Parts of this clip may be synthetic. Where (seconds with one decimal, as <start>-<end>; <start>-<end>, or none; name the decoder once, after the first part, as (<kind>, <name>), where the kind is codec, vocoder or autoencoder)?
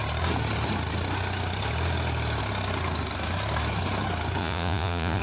4.4-5.2 (vocoder, Vocos)